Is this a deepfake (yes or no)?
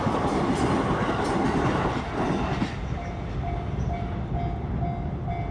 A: no